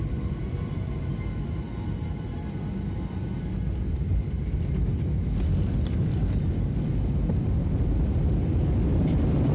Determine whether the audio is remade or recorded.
recorded